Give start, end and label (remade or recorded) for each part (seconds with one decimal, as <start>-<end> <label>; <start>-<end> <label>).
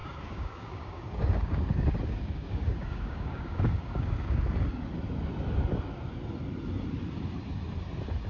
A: 0.0-4.4 remade; 4.4-8.3 recorded